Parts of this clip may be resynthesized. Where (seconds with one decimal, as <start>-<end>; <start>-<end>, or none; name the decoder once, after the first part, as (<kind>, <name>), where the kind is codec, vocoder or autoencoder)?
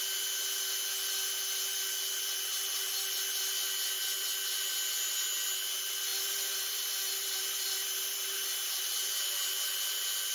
6.1-8.8 (vocoder, BigVGAN v2)